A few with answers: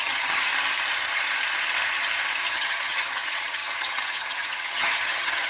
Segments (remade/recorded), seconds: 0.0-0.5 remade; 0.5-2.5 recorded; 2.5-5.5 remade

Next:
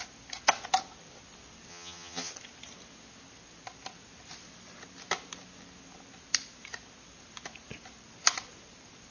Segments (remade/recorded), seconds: 0.0-1.7 recorded; 1.7-2.3 remade; 2.3-9.1 recorded

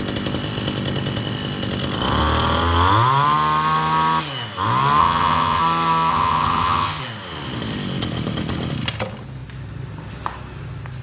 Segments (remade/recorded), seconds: 0.0-5.0 recorded; 5.0-5.6 remade; 5.6-6.1 recorded; 6.1-7.0 remade; 7.0-11.0 recorded

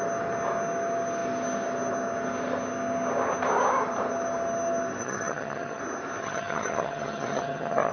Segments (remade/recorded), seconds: 0.0-5.0 recorded; 5.0-5.8 remade; 5.8-6.2 recorded; 6.2-7.9 remade

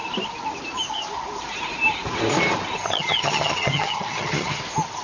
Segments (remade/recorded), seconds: 0.0-2.8 recorded; 2.8-4.6 remade; 4.6-5.0 recorded

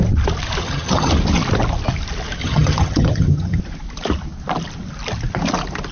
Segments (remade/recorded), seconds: 0.0-0.6 recorded; 0.6-1.1 remade; 1.1-2.4 recorded; 2.4-3.6 remade; 3.6-5.9 recorded